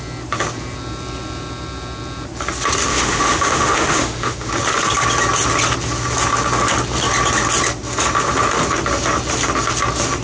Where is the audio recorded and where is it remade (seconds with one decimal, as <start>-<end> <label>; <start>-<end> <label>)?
0.0-2.9 recorded; 2.9-4.5 remade; 4.5-10.2 recorded